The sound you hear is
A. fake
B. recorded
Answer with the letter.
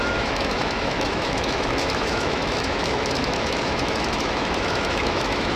A